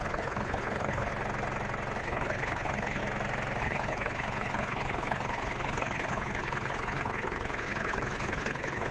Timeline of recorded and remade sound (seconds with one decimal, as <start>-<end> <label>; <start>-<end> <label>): 0.0-1.1 remade; 1.1-2.0 recorded; 2.0-3.0 remade; 3.0-3.6 recorded; 3.6-8.9 remade